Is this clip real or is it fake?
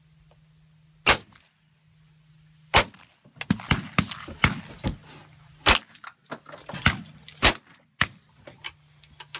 real